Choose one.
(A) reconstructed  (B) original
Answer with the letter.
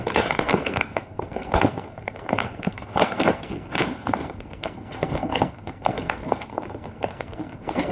A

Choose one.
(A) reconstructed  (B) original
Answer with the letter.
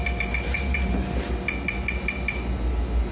B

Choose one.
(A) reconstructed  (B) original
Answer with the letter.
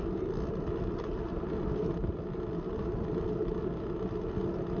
B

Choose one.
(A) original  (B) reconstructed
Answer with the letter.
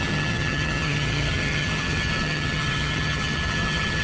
B